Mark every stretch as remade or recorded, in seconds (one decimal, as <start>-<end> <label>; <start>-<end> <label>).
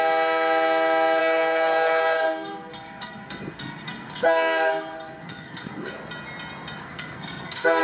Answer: 0.0-1.2 recorded; 1.2-5.9 remade; 5.9-6.8 recorded; 6.8-7.8 remade